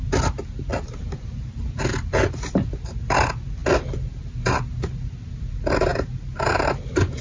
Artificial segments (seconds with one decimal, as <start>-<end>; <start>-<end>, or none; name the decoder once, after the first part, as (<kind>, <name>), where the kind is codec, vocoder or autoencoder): 0.7-1.6 (vocoder, BigVGAN v2); 5.9-6.8